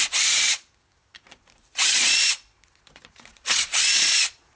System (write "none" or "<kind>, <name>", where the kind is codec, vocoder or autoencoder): vocoder, Vocos